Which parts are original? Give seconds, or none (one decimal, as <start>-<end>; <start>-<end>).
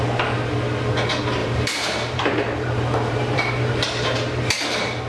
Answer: 0.0-1.4; 4.5-5.1